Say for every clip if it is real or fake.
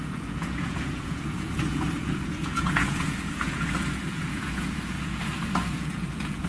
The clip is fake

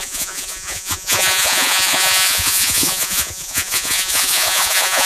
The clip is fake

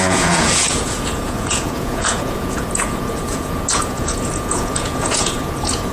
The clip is fake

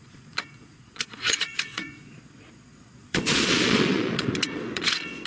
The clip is fake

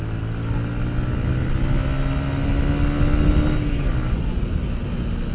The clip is real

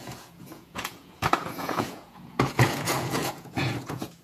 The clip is fake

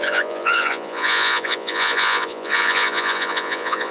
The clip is fake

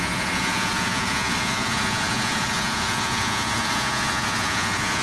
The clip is fake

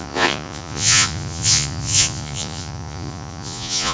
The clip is fake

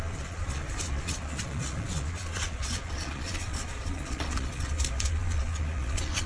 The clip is fake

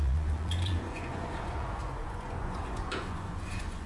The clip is fake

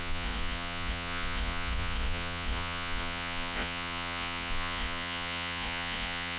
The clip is fake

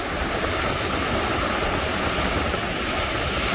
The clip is real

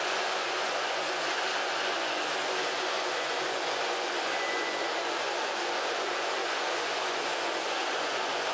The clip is fake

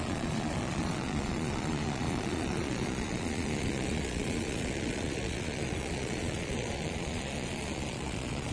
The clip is fake